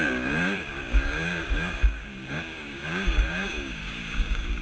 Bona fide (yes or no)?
no